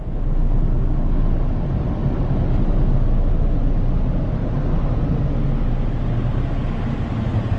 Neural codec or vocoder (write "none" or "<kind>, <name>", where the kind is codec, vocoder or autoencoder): none